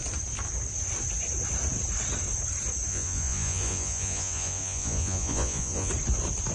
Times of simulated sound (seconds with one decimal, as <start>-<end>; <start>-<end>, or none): 2.9-5.9